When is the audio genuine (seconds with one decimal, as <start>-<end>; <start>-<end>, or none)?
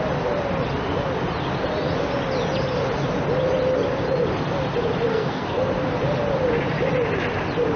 0.0-5.1; 5.7-7.8